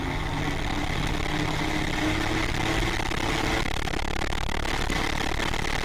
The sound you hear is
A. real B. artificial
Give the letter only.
A